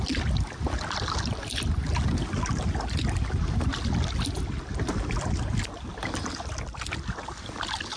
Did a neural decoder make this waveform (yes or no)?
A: no